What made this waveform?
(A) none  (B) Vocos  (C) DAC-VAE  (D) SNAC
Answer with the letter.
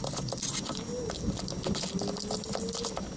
A